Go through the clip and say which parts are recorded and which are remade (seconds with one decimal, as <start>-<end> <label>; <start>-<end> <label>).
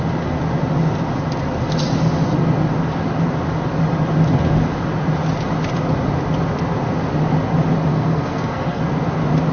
0.0-7.9 recorded; 7.9-8.8 remade; 8.8-9.5 recorded